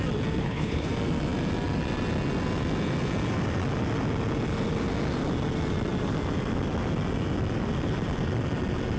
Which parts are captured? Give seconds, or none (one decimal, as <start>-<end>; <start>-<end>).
0.0-0.4; 0.9-9.0

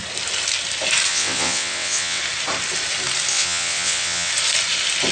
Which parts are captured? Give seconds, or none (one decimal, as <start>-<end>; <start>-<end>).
0.0-1.1; 2.2-3.3; 4.3-5.1

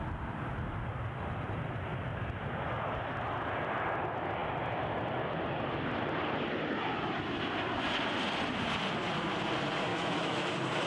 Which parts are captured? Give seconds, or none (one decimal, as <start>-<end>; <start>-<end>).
0.0-9.9; 10.5-10.9

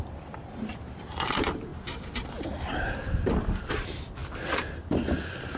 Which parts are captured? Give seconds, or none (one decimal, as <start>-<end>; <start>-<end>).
1.7-3.7; 4.2-5.6

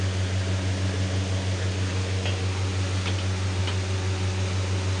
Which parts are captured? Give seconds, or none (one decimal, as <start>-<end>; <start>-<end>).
0.0-5.0

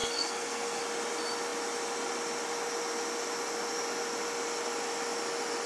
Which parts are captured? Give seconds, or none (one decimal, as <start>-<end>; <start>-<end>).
0.8-5.7

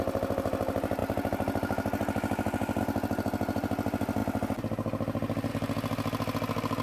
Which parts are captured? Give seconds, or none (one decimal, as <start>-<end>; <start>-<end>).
0.0-6.8

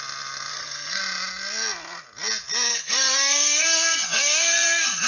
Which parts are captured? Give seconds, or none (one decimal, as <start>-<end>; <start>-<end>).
0.0-0.5; 1.0-2.7